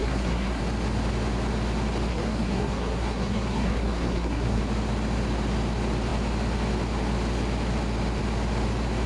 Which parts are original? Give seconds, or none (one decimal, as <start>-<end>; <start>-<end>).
0.6-2.1; 4.6-9.1